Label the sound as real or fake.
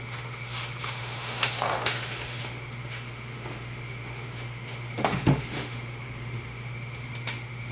fake